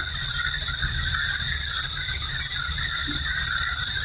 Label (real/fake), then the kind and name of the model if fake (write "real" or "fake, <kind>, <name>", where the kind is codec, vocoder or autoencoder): real